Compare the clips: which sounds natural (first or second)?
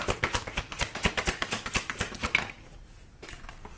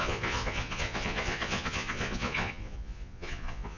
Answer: first